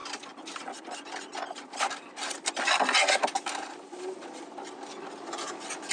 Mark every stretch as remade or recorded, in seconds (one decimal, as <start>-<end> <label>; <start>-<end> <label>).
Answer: 0.0-5.9 recorded